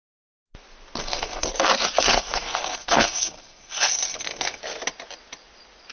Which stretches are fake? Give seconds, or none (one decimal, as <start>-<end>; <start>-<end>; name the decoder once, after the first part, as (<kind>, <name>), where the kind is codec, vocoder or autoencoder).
1.0-1.5 (codec, SNAC); 2.1-4.6